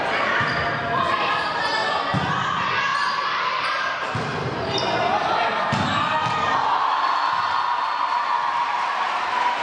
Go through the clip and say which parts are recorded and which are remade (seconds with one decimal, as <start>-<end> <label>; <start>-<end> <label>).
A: 0.0-1.8 remade; 1.8-2.5 recorded; 2.5-4.3 remade; 4.3-8.6 recorded; 8.6-9.6 remade